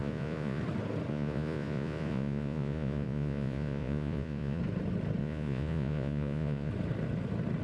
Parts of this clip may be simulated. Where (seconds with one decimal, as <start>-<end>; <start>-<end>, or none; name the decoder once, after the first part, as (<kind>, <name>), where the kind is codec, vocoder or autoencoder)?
0.0-0.6 (vocoder, Vocos); 1.1-4.6; 5.2-6.7